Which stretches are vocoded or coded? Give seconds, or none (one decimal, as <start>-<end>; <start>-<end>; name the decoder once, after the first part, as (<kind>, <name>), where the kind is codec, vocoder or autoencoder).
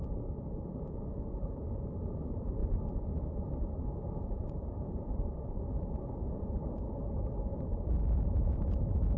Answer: 0.0-2.6 (vocoder, BigVGAN v2); 3.9-9.2